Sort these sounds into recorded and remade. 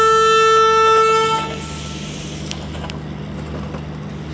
recorded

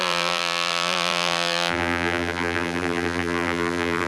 remade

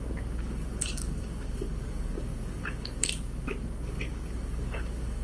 remade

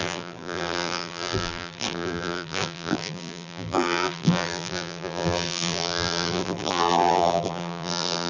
remade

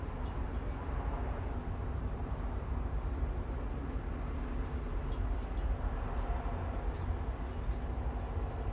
recorded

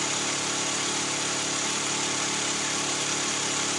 recorded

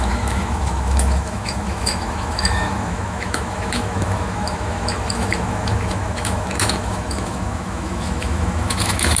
remade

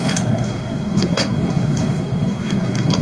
remade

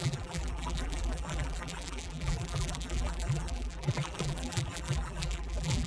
remade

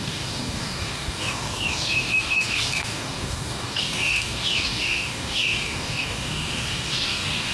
remade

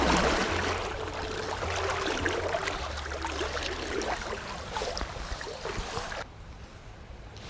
recorded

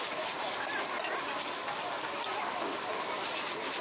recorded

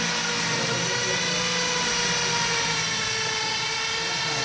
recorded